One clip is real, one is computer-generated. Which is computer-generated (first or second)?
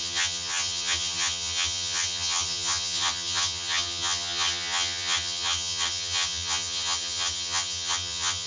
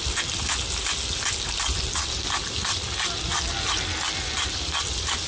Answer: first